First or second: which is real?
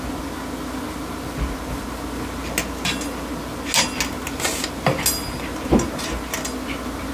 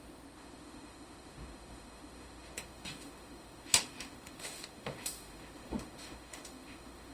first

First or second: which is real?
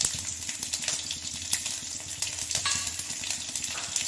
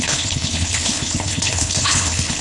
first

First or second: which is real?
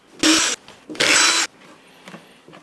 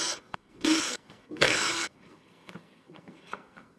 first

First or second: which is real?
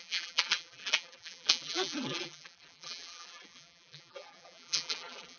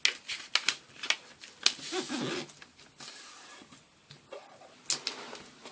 second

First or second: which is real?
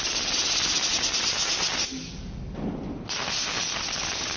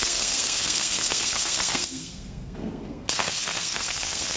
first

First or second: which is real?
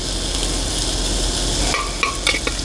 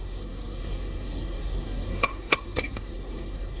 first